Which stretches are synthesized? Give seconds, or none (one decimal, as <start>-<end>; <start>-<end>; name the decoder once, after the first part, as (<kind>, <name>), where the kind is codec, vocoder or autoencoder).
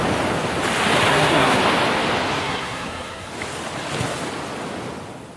1.1-1.6 (codec, SNAC); 2.4-3.3